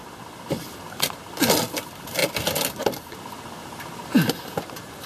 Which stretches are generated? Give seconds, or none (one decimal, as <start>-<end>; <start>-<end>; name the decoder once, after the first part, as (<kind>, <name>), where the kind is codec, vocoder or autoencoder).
none